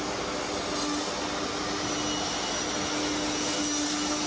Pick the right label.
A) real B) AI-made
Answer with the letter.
A